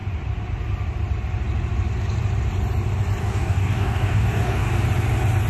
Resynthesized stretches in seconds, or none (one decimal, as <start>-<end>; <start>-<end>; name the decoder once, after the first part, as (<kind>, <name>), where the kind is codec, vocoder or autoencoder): 3.2-4.7 (codec, DAC)